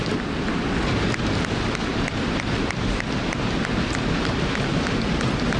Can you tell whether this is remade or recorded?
recorded